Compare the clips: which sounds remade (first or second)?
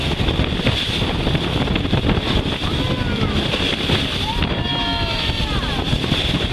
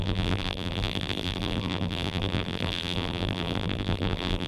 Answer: second